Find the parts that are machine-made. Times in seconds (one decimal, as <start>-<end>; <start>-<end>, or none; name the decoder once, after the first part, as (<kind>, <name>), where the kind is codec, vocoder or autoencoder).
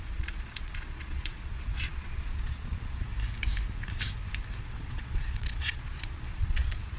0.0-3.1 (vocoder, Vocos); 4.6-7.0